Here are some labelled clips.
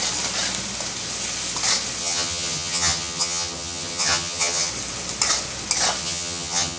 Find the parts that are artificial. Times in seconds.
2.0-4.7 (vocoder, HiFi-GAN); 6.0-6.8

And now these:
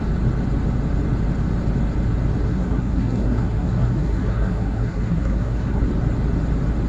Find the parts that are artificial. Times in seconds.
2.5-5.9 (codec, SNAC)

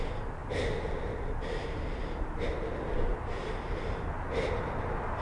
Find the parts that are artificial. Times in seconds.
none

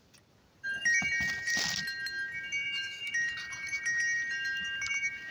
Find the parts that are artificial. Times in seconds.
2.6-3.1 (autoencoder, DAC-VAE)

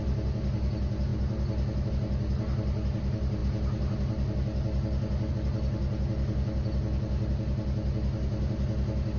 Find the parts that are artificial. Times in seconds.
none

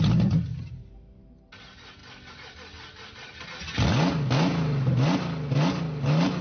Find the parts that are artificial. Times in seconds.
none

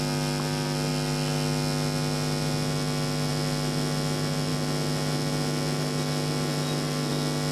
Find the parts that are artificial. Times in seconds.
none

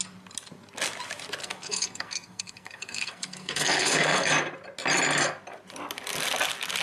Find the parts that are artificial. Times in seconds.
1.4-4.3 (codec, SNAC)